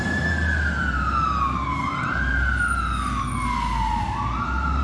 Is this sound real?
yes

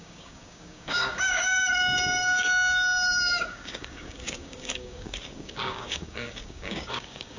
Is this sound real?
no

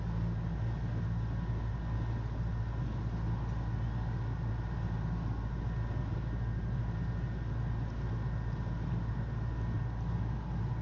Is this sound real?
yes